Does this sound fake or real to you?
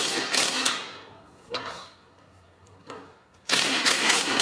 fake